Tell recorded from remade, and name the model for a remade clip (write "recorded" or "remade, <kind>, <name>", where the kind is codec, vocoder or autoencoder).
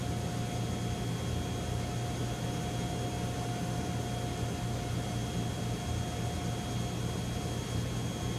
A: recorded